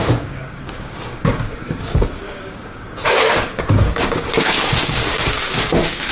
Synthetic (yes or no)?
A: yes